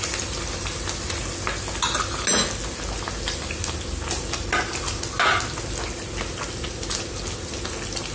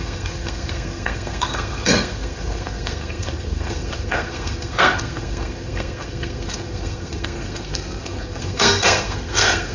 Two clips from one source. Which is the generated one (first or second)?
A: second